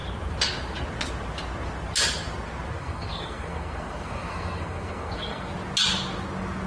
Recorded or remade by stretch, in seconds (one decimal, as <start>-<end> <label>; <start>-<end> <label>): 0.0-2.8 recorded; 2.8-5.5 remade; 5.5-6.7 recorded